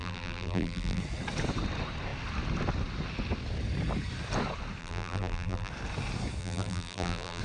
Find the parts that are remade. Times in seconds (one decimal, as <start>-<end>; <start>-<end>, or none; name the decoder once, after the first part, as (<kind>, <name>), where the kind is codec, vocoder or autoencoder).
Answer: 0.0-1.0 (vocoder, BigVGAN v2); 4.8-5.7; 6.4-7.4